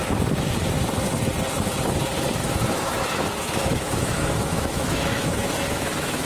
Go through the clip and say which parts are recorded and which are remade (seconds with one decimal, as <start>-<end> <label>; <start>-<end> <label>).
0.0-2.4 recorded; 2.4-6.3 remade